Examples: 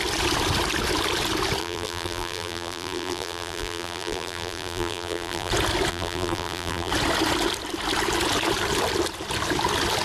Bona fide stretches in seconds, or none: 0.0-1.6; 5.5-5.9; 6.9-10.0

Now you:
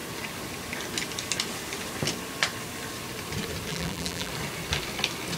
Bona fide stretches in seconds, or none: 0.0-3.7; 4.3-5.4

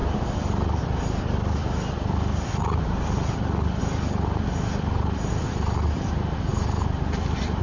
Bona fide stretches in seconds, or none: 0.0-6.5

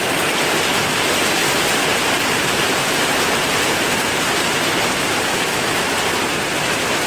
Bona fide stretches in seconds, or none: 0.0-1.4; 5.7-7.1